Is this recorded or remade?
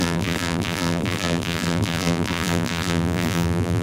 remade